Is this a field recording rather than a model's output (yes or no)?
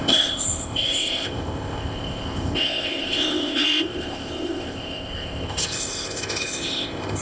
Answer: no